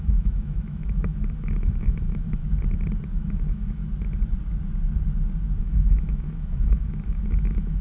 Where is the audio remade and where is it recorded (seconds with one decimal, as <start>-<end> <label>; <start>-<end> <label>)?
0.0-2.4 remade; 2.4-3.1 recorded; 3.1-3.8 remade; 3.8-5.6 recorded; 5.6-7.8 remade